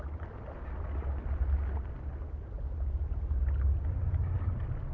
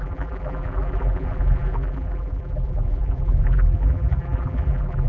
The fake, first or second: second